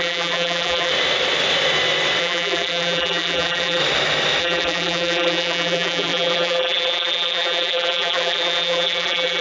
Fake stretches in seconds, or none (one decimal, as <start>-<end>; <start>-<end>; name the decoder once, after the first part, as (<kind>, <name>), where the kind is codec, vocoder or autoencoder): 0.0-0.9 (vocoder, BigVGAN v2); 2.2-3.8; 4.4-9.4